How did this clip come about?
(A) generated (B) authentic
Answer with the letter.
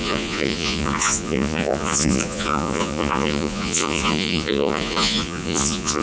A